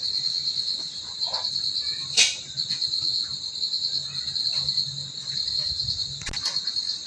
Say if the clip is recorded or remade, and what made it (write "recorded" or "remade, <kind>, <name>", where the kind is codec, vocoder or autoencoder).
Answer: recorded